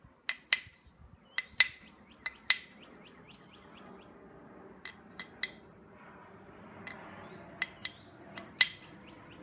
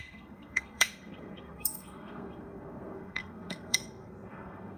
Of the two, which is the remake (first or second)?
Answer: second